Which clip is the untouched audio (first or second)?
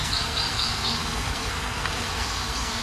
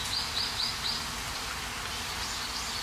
second